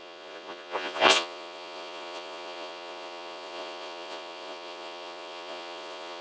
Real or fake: fake